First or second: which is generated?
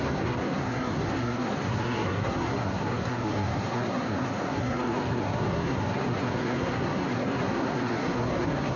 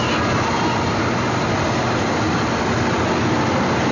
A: first